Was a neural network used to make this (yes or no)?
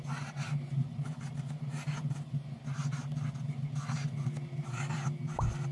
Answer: no